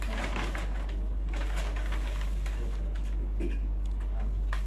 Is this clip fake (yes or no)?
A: yes